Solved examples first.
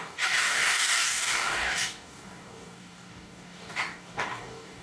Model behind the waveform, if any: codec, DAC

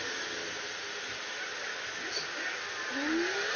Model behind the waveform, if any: none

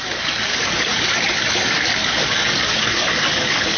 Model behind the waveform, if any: codec, DAC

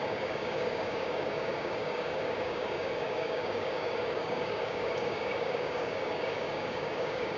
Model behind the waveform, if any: codec, DAC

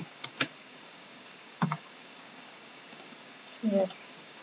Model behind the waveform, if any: codec, DAC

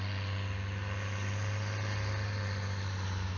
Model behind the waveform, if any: none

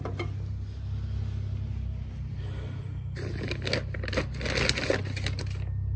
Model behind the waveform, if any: none